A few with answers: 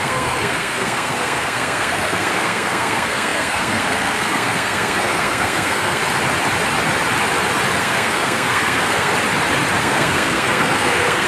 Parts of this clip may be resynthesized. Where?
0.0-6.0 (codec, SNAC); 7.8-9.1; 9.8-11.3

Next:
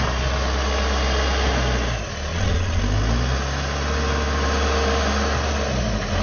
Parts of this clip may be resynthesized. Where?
2.3-2.8 (vocoder, Vocos)

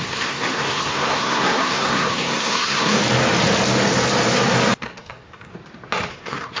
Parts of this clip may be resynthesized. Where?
0.0-3.0 (codec, SNAC); 4.8-5.5; 6.1-6.6

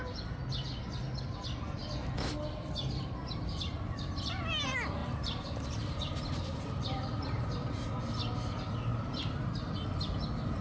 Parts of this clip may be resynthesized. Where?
5.0-7.9 (vocoder, BigVGAN v2); 8.9-10.0